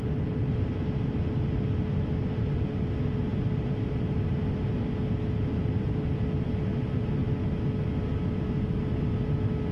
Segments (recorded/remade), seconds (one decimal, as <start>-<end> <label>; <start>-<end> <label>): 0.0-9.7 recorded